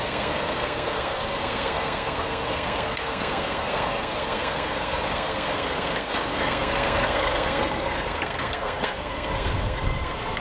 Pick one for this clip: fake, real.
fake